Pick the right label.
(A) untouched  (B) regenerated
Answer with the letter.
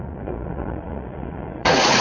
B